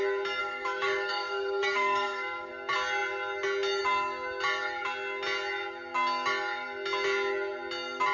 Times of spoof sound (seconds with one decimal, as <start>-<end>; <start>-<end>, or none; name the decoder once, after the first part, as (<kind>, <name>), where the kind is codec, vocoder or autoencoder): 0.4-2.5 (codec, DAC)